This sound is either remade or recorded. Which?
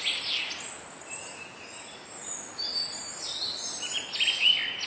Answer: recorded